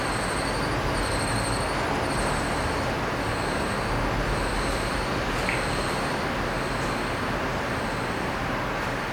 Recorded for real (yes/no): yes